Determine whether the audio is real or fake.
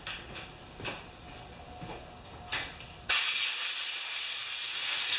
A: real